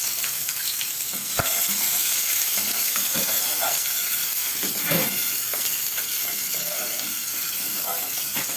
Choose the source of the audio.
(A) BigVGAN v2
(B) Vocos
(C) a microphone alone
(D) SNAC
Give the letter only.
D